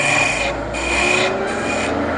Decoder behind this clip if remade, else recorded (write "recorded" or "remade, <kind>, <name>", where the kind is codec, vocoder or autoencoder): recorded